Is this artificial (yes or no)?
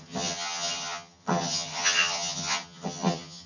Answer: yes